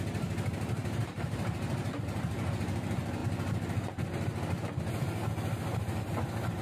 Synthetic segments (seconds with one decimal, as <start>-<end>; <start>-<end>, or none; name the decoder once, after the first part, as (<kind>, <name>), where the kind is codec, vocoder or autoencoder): 0.8-2.5 (vocoder, BigVGAN v2)